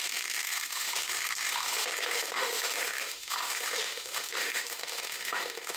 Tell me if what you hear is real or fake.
fake